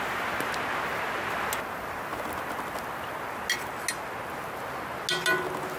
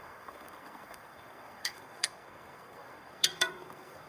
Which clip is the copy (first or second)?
second